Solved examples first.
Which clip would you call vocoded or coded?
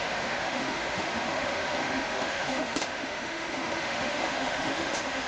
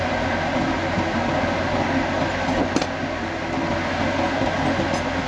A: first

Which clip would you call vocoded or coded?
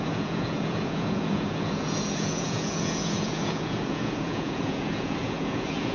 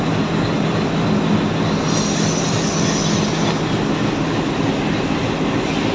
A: first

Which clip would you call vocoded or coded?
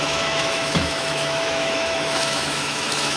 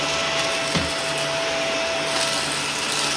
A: first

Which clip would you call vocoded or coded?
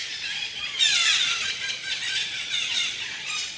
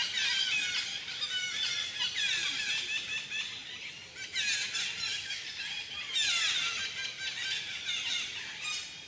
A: first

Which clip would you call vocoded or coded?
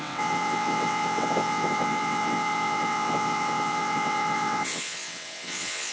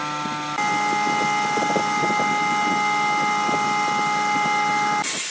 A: first